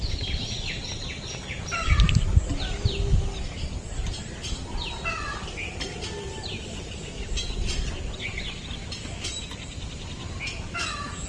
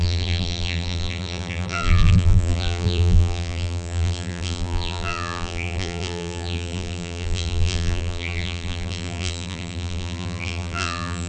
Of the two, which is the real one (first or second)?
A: first